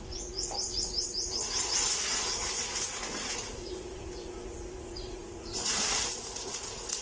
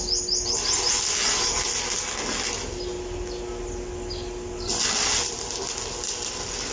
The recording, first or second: second